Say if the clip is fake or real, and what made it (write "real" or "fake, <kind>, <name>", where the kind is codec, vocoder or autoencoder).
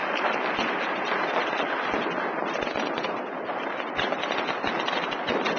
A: real